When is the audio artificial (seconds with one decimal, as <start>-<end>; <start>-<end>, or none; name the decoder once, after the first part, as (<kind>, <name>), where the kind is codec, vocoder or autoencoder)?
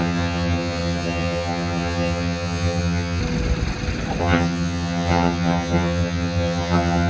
0.0-3.2 (vocoder, HiFi-GAN); 4.2-7.1